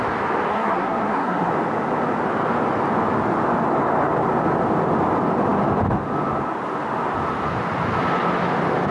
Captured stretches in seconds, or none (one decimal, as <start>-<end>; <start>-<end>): 0.0-0.5; 1.5-8.9